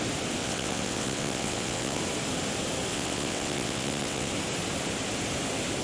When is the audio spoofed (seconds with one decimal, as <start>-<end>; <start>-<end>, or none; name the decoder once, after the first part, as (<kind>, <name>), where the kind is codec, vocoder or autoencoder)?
0.4-2.0 (vocoder, WaveNeXt); 2.9-4.3

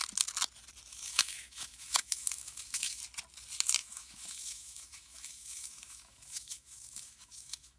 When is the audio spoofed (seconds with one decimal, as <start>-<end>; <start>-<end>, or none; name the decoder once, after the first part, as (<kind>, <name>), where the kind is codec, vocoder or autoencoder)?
0.9-3.0 (autoencoder, DAC-VAE); 3.8-7.8